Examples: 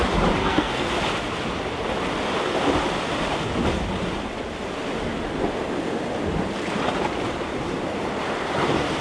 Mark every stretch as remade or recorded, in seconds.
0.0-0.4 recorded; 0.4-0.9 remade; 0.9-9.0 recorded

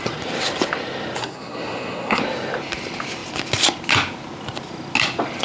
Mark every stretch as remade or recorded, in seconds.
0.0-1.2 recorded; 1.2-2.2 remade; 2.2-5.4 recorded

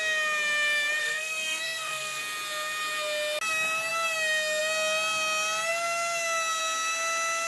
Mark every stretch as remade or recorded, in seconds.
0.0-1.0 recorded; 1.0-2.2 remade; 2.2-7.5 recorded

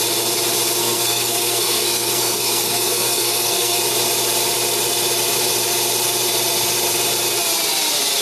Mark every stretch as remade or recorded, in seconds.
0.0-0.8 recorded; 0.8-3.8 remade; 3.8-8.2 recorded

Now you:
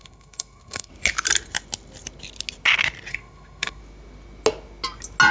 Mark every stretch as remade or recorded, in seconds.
0.0-0.9 remade; 0.9-3.1 recorded; 3.1-3.8 remade; 3.8-5.3 recorded

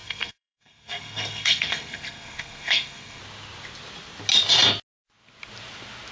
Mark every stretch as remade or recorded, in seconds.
0.0-3.2 remade; 3.2-6.1 recorded